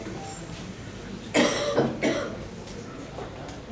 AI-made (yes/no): no